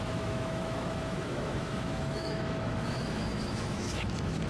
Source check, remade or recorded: remade